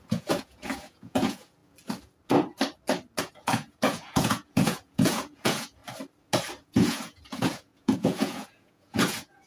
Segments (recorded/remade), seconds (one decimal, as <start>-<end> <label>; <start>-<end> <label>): 0.0-1.6 remade; 1.6-3.2 recorded; 3.2-5.8 remade; 5.8-6.6 recorded; 6.6-9.5 remade